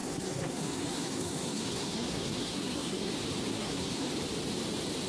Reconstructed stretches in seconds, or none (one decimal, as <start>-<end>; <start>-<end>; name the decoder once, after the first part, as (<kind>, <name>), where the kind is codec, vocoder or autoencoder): 0.0-3.1 (codec, SNAC); 3.5-4.1